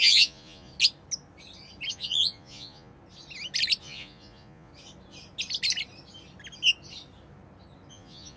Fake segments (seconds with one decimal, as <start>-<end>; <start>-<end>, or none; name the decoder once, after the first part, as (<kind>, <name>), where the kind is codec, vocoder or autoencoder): 0.0-0.7 (vocoder, Vocos); 1.9-2.9; 3.8-4.7; 7.9-8.4